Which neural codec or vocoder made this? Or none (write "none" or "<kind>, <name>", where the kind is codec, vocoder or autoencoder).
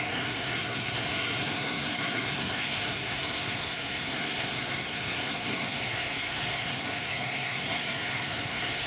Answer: codec, SNAC